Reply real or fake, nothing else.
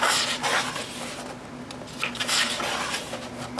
real